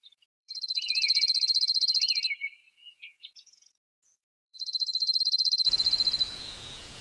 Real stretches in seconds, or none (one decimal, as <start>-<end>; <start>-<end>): 2.2-2.7